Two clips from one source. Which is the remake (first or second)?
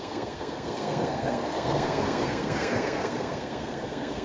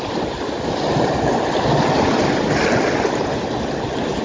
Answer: first